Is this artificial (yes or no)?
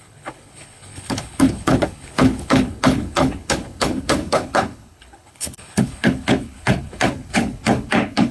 yes